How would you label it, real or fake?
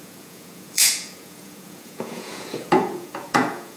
fake